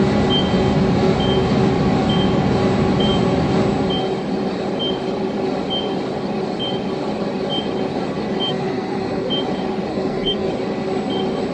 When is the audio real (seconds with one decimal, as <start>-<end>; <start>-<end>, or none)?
0.0-8.5; 9.3-9.9; 10.5-11.5